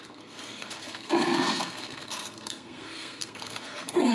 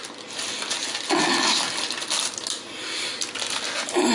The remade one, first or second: first